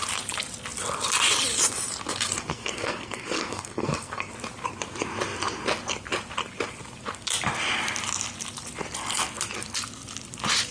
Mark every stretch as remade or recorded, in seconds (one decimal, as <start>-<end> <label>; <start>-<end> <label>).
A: 0.0-2.5 recorded; 2.5-4.3 remade; 4.3-10.7 recorded